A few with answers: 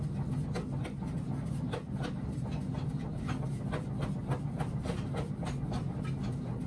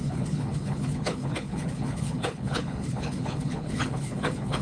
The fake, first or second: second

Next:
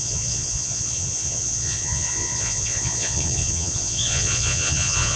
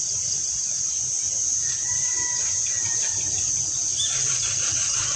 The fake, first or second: first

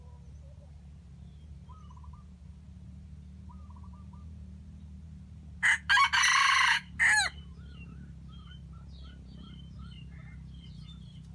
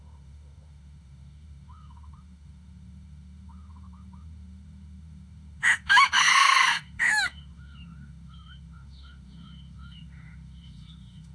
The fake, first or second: second